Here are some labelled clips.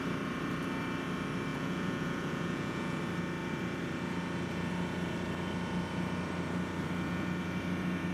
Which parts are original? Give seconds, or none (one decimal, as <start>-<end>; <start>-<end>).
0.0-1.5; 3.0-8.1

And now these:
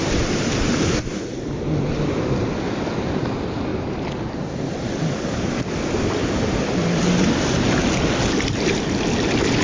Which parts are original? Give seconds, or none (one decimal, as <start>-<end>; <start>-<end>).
0.0-9.6

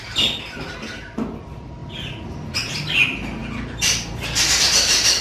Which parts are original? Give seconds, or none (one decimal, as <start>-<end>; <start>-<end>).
0.0-3.4; 4.6-5.2

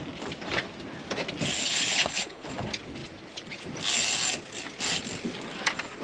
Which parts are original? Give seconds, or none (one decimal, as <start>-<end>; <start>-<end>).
0.0-1.6; 2.5-6.0